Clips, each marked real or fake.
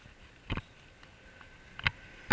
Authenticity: real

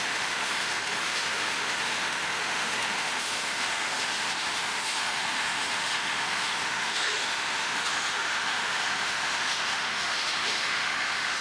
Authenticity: fake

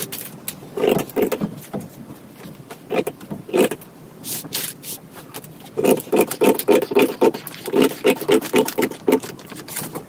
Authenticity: real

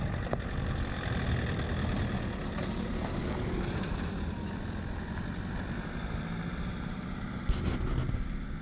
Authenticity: real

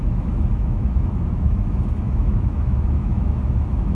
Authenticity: fake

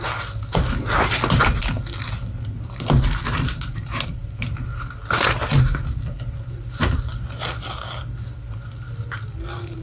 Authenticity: real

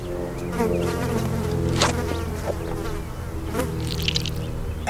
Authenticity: real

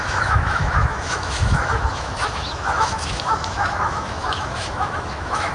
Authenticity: fake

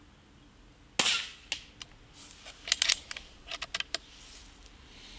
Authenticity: real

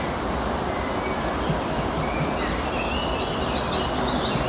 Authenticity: real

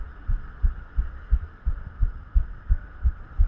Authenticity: real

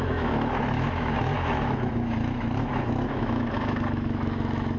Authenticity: fake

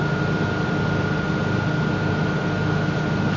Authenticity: real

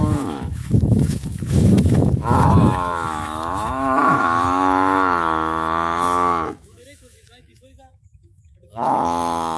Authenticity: fake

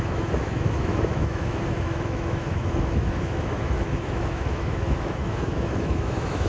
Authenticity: fake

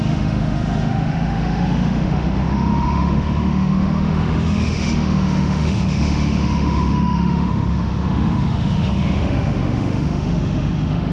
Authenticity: fake